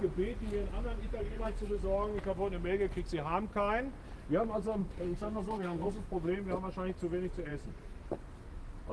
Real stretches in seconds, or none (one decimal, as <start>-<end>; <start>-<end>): 0.0-1.2; 1.8-4.8; 6.1-8.9